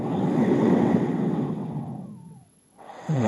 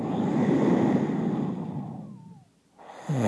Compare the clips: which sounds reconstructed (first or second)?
first